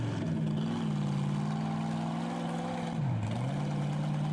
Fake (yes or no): no